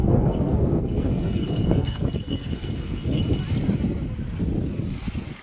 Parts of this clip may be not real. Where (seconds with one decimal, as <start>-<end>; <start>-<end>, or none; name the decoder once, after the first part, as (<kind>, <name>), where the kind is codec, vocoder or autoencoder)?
0.0-3.2 (codec, SNAC)